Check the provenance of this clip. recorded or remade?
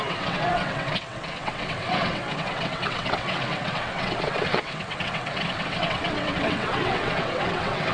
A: remade